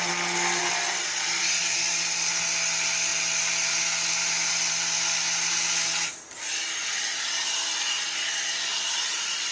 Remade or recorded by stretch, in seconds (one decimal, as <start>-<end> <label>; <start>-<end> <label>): 0.0-8.7 recorded; 8.7-9.5 remade